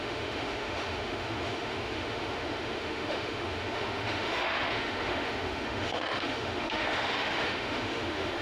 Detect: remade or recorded remade